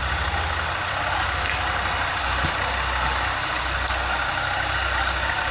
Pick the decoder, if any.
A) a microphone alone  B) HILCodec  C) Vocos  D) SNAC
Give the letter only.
A